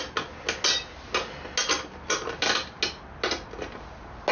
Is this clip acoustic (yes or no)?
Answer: yes